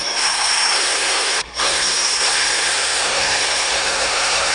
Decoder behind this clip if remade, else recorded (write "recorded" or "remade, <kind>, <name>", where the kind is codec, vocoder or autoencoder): remade, codec, SNAC